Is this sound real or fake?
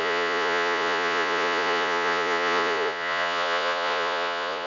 fake